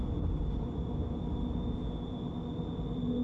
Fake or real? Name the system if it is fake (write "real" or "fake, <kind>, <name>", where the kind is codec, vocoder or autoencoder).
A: real